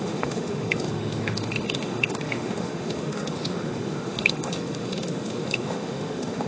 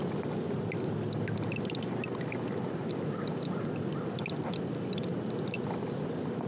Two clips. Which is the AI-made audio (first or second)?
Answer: first